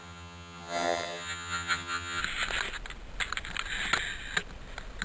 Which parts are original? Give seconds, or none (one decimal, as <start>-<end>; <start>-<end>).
2.2-5.0